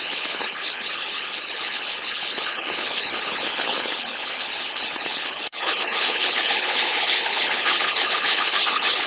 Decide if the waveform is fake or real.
fake